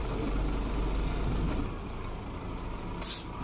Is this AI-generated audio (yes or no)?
no